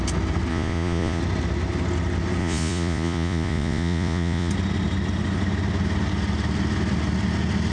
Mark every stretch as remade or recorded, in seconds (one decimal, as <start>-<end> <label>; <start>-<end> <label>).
0.0-0.5 recorded; 0.5-1.2 remade; 1.2-2.4 recorded; 2.4-4.5 remade; 4.5-7.7 recorded